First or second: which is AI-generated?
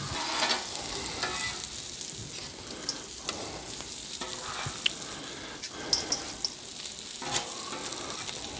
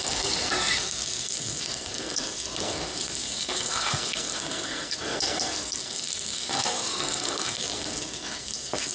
second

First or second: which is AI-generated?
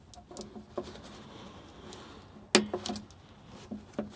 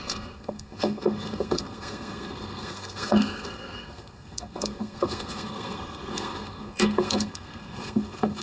second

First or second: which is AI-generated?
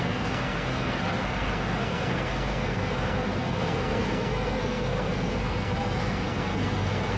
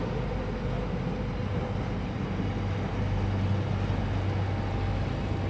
first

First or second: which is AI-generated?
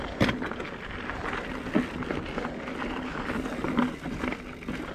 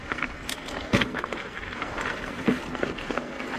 second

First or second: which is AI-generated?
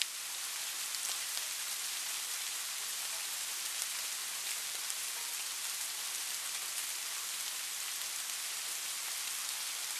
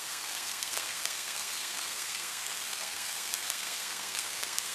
second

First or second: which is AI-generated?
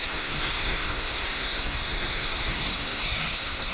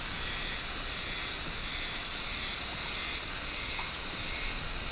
first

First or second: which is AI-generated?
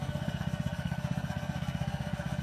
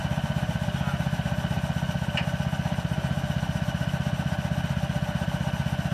first